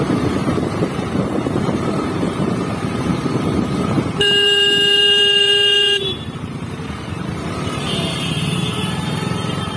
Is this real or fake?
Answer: fake